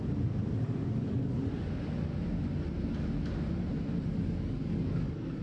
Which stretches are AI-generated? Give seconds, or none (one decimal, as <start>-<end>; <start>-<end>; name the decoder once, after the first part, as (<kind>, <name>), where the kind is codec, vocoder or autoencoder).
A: 0.8-1.4 (codec, DAC); 4.1-5.4

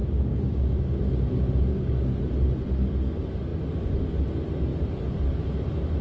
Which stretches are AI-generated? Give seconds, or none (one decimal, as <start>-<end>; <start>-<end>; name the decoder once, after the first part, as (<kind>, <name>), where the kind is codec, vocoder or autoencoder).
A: 0.0-1.0 (codec, DAC); 1.7-2.2

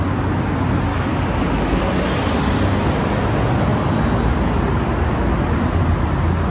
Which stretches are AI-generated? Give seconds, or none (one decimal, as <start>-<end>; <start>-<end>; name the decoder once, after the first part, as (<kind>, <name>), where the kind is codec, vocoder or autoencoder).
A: 0.9-1.9 (codec, DAC)

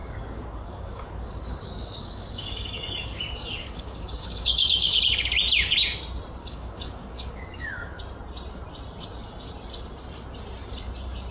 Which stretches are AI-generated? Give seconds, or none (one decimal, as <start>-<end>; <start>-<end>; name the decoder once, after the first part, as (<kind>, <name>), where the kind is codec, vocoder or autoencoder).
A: 0.0-5.0 (codec, DAC); 6.4-8.0

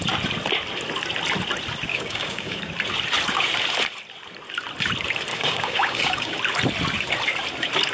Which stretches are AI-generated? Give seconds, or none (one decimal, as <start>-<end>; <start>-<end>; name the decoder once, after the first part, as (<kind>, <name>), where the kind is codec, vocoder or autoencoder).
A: 1.9-2.6 (codec, DAC); 5.3-6.4

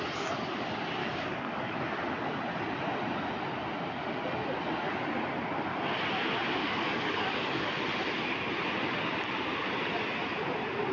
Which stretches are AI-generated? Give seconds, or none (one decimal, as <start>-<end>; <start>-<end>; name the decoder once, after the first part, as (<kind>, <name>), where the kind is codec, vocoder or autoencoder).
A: 1.0-1.8 (codec, DAC); 6.6-7.8

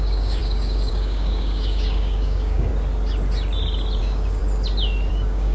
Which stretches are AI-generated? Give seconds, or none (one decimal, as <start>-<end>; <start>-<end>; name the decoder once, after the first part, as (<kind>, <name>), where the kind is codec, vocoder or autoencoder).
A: 0.0-2.7 (codec, DAC); 4.0-4.4; 5.1-5.5

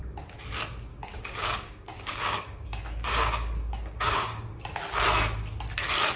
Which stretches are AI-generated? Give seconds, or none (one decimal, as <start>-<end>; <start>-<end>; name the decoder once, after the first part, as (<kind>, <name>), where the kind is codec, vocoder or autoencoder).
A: 0.9-4.6 (codec, DAC)